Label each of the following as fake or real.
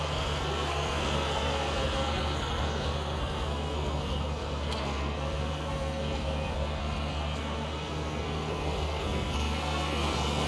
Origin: fake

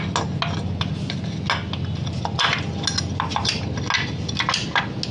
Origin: real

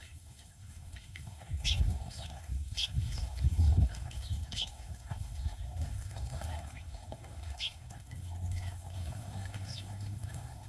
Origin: fake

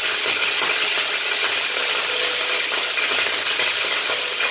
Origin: real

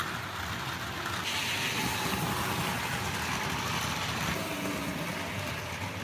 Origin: real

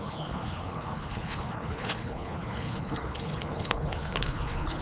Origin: fake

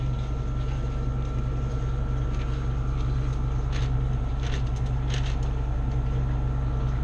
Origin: real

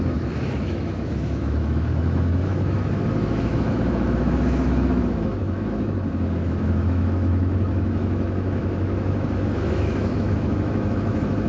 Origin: fake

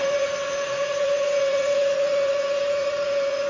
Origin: fake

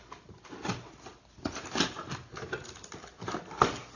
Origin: real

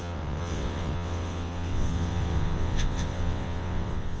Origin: fake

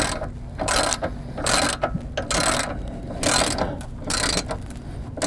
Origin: real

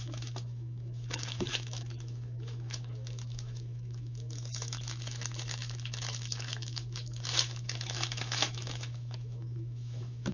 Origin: fake